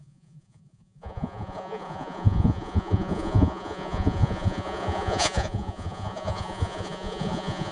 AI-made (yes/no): yes